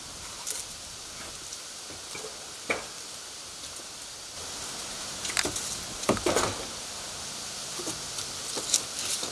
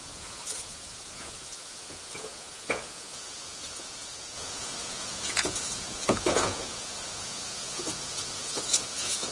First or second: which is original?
first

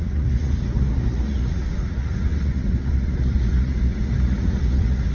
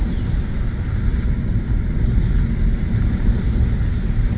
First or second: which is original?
second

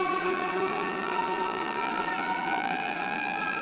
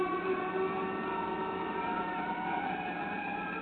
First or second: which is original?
second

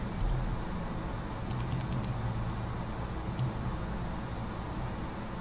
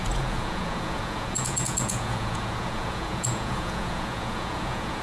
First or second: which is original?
first